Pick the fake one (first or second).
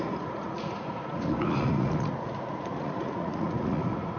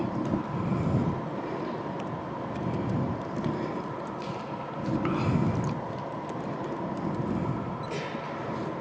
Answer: first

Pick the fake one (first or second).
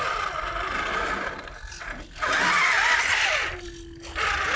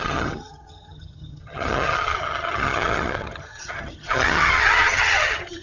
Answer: second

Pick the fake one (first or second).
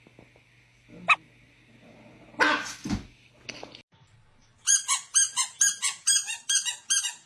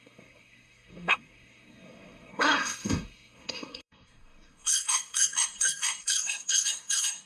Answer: second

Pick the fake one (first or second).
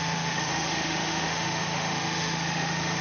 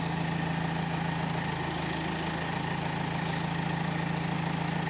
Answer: first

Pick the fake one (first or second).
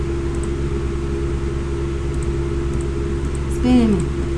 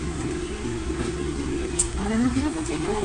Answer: second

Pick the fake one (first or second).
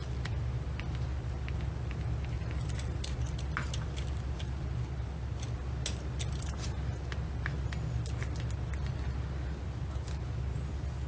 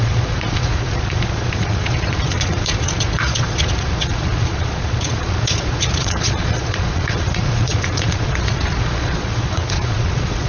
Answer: second